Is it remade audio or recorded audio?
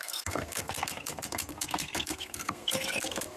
remade